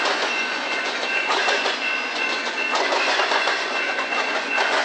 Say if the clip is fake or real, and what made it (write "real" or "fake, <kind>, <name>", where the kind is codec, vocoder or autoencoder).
fake, vocoder, Vocos